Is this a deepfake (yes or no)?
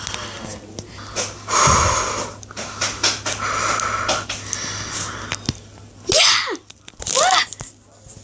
no